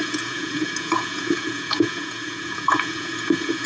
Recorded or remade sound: remade